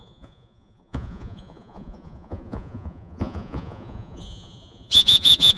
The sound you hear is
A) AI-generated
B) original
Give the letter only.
A